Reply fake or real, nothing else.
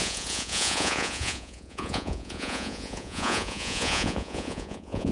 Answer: fake